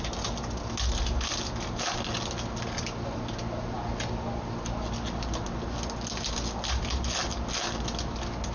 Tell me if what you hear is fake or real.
real